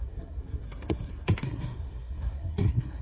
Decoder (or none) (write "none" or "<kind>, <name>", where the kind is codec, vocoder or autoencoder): codec, SNAC